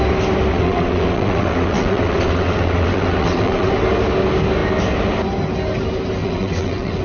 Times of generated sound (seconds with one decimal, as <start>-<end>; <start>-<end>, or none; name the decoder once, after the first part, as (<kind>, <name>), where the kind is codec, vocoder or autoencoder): 0.5-3.7 (vocoder, WaveNeXt); 6.2-7.0

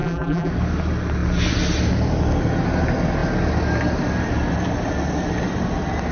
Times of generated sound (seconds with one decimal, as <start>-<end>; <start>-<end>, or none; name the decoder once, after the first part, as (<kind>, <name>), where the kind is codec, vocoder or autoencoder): 0.0-0.5 (vocoder, BigVGAN v2)

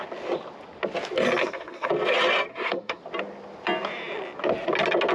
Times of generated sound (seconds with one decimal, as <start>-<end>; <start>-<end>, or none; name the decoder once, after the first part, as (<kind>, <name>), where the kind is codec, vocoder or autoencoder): 1.4-1.9 (codec, SNAC); 2.5-3.0

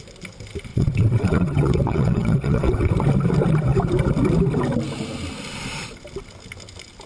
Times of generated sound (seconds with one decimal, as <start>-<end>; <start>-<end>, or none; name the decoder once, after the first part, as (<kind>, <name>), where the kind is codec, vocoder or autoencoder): 0.7-2.9 (vocoder, WaveNeXt)

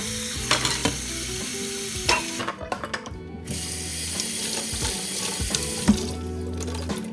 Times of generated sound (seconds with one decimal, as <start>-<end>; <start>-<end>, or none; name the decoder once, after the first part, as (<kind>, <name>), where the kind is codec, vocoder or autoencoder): 0.8-1.5 (vocoder, BigVGAN v2); 3.9-4.4

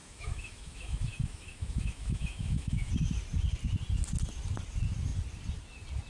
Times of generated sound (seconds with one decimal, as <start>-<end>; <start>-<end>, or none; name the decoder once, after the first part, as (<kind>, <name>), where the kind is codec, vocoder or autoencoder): 0.0-2.9 (autoencoder, DAC-VAE)